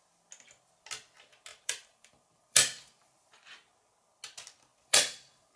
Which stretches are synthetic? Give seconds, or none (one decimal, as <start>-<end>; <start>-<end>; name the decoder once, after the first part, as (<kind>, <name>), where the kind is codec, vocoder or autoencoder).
1.5-3.4 (vocoder, BigVGAN v2); 4.7-5.6